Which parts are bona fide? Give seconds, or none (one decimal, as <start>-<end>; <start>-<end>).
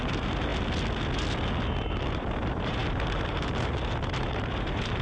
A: 0.5-2.1